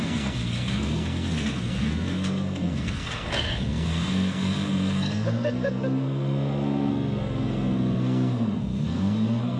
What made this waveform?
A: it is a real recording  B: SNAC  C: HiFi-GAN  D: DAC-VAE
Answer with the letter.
B